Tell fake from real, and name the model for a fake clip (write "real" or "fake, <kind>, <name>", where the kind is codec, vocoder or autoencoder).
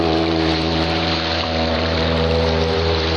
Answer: fake, vocoder, BigVGAN v2